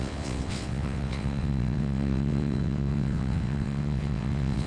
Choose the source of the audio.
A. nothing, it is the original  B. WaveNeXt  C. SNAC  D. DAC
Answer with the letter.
B